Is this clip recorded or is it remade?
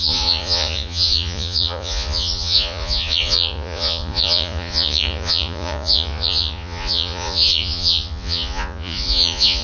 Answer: remade